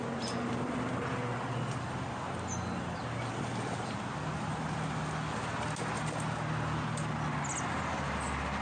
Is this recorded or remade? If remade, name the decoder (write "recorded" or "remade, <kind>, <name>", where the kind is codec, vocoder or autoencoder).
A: recorded